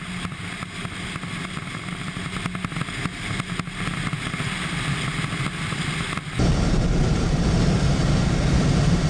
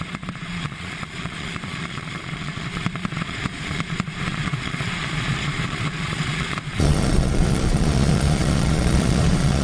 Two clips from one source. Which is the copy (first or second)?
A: second